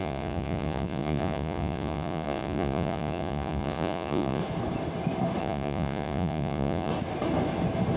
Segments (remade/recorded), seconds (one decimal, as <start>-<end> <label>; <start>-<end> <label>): 0.0-4.4 remade; 4.4-5.4 recorded; 5.4-6.9 remade; 6.9-8.0 recorded